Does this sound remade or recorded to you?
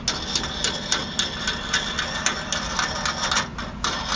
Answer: recorded